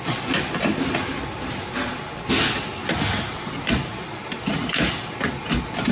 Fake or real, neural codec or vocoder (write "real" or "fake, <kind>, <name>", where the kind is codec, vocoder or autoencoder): real